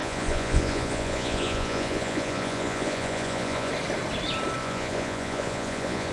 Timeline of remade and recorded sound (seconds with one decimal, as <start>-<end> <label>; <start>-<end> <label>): 0.0-3.7 remade; 3.7-4.6 recorded; 4.6-6.1 remade